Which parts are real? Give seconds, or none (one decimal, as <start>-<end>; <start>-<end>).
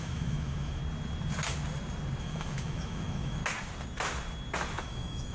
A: 0.8-2.2; 3.4-4.8